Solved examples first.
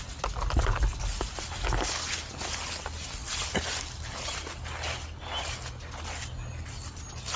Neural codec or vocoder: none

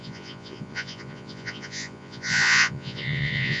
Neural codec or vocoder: vocoder, Vocos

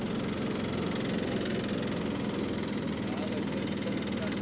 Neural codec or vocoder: none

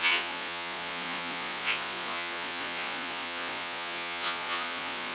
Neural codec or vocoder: vocoder, Vocos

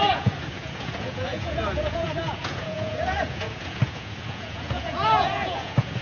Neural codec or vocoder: vocoder, Vocos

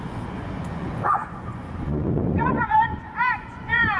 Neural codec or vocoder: vocoder, Vocos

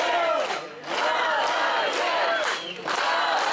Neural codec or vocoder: none